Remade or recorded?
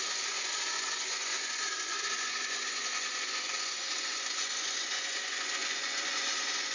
remade